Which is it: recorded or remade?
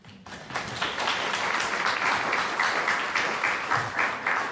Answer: recorded